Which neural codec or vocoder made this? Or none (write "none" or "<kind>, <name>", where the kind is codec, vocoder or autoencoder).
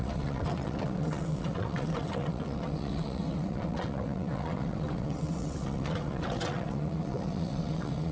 vocoder, WaveNeXt